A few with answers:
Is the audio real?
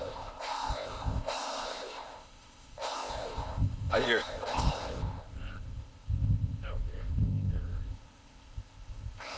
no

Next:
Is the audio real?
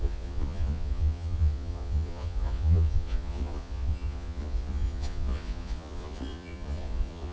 no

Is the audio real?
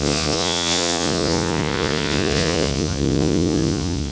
no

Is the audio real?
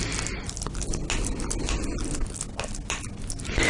yes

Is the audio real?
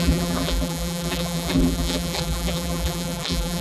no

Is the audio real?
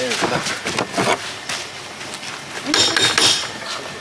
yes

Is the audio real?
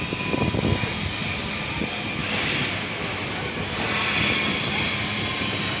yes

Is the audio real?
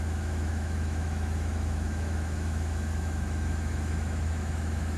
no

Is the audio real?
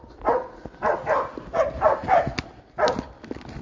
yes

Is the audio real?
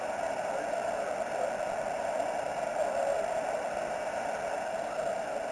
yes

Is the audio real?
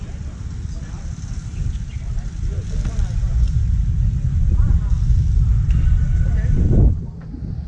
yes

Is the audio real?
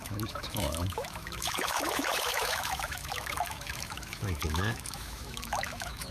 no